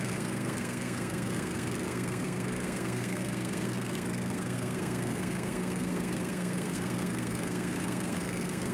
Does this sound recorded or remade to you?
remade